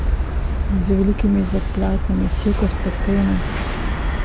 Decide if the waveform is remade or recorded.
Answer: recorded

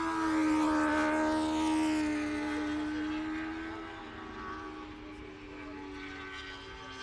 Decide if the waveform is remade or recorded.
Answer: recorded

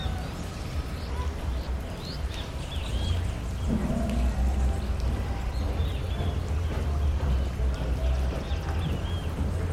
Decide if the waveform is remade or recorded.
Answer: recorded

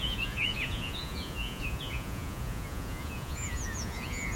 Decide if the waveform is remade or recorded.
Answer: remade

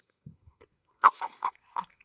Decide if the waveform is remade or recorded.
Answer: remade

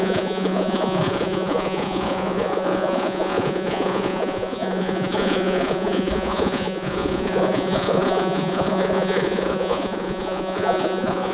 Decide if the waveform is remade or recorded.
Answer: remade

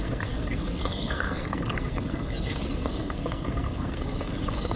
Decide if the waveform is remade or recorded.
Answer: remade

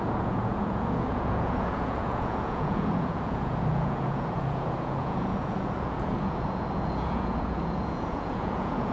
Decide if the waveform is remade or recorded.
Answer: remade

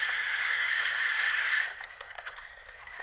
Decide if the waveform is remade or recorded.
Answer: remade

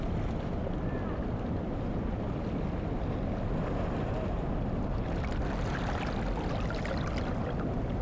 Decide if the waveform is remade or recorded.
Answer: recorded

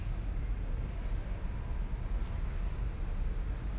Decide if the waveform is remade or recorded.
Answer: recorded